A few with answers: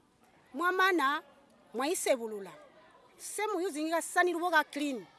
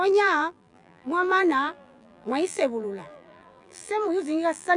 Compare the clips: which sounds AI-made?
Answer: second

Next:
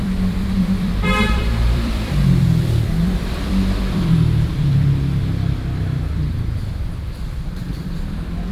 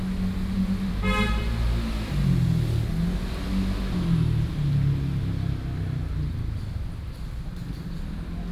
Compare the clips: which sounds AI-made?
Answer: first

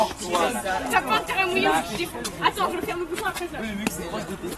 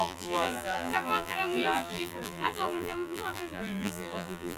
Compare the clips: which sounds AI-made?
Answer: second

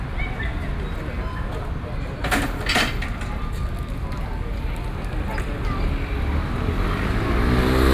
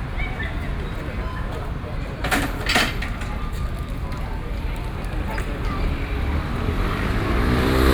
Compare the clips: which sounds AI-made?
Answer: second